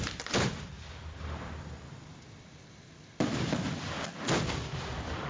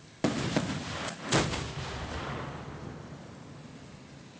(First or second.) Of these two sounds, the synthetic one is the first